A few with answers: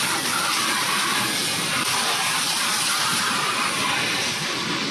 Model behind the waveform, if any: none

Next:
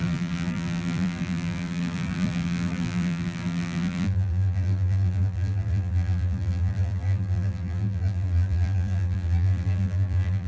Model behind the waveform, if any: vocoder, BigVGAN v2